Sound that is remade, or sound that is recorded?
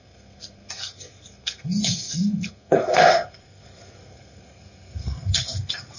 remade